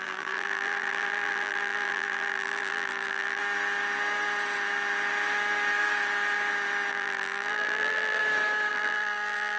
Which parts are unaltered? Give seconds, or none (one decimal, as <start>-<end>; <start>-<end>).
3.4-6.9; 8.2-8.7